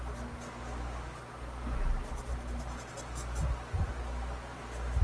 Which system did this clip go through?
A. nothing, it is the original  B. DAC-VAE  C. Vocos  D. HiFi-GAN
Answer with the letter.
A